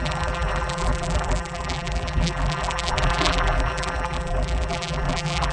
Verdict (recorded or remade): remade